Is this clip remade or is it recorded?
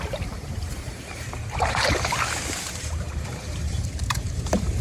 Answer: remade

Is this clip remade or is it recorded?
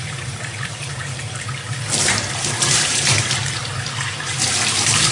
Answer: remade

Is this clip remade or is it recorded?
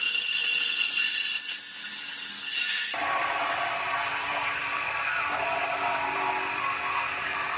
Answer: remade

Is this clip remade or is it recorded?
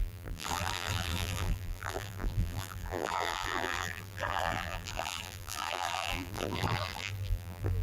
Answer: remade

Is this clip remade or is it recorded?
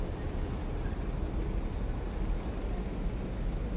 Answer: recorded